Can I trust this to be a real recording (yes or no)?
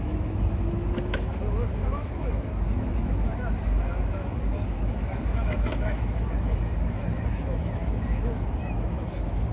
no